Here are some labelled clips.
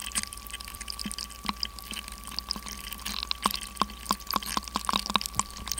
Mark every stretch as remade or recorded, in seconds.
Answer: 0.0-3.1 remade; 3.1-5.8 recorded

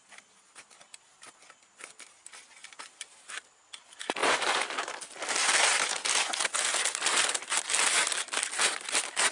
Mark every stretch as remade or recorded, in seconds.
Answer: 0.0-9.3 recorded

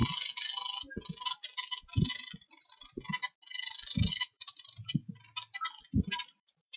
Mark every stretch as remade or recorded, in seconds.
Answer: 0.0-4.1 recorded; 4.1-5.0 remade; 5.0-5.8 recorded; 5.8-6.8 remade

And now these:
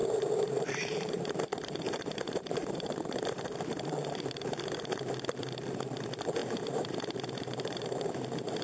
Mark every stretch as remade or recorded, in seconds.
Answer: 0.0-5.0 remade; 5.0-6.4 recorded; 6.4-8.2 remade; 8.2-8.6 recorded

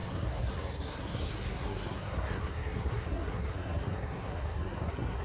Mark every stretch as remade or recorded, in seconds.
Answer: 0.0-5.2 remade

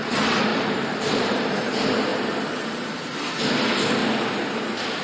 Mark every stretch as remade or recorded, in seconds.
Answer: 0.0-0.5 recorded; 0.5-1.7 remade; 1.7-5.0 recorded